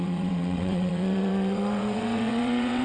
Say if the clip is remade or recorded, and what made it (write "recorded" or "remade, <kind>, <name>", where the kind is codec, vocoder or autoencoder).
remade, vocoder, WaveNeXt